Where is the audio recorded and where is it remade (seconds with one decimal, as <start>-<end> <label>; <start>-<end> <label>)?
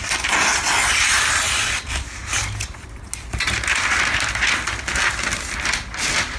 0.0-6.4 recorded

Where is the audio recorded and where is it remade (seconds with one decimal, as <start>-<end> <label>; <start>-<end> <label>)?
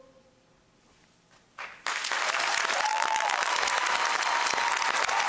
0.0-2.9 recorded; 2.9-3.5 remade; 3.5-5.3 recorded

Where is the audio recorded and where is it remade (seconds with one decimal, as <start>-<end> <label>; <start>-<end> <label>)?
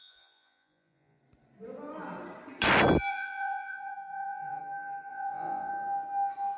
0.0-1.2 remade; 1.2-3.1 recorded; 3.1-4.6 remade; 4.6-5.1 recorded; 5.1-5.7 remade; 5.7-6.6 recorded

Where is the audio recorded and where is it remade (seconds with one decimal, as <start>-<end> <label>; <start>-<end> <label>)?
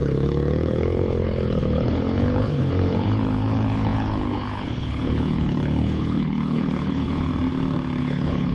0.0-7.3 remade; 7.3-8.0 recorded; 8.0-8.5 remade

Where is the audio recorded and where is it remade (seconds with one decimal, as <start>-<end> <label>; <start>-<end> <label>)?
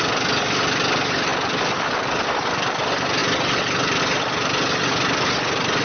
0.0-3.2 recorded; 3.2-4.0 remade; 4.0-5.8 recorded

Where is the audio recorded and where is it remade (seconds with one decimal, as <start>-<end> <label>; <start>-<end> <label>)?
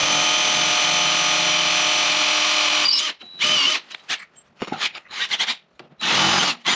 0.0-4.6 recorded; 4.6-5.2 remade; 5.2-6.8 recorded